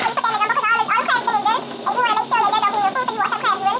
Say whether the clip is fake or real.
real